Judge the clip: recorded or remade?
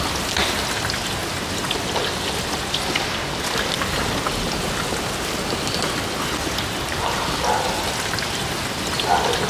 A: recorded